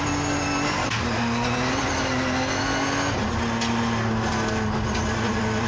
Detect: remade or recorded recorded